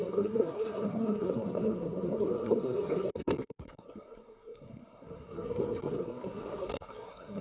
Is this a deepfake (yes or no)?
yes